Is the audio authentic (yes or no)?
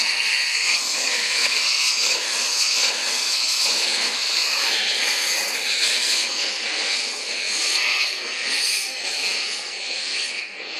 no